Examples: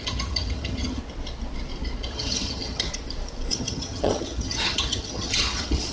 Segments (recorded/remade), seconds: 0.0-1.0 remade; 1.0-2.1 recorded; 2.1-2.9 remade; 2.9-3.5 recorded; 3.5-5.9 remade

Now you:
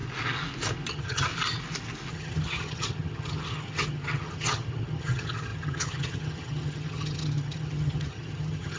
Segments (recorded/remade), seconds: 0.0-0.9 recorded; 0.9-1.3 remade; 1.3-2.1 recorded; 2.1-8.8 remade

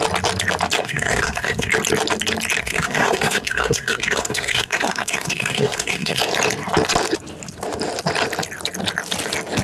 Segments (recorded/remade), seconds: 0.0-0.8 recorded; 0.8-1.7 remade; 1.7-2.6 recorded; 2.6-6.2 remade; 6.2-9.6 recorded

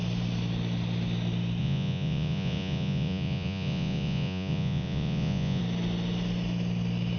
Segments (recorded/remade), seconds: 0.0-1.6 recorded; 1.6-5.6 remade; 5.6-7.2 recorded

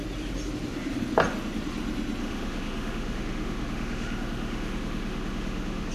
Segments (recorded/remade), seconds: 0.0-2.2 recorded; 2.2-5.9 remade

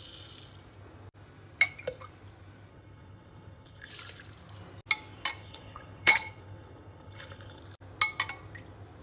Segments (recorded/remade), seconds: 0.0-2.7 recorded; 2.7-3.9 remade; 3.9-5.4 recorded; 5.4-7.6 remade; 7.6-9.0 recorded